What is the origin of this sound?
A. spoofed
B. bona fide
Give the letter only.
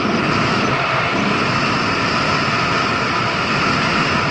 B